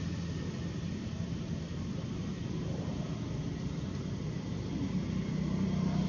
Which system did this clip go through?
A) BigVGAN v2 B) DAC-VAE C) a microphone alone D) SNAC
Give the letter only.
A